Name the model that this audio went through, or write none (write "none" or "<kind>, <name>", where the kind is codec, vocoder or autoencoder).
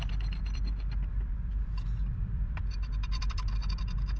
none